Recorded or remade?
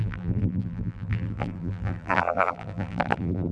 remade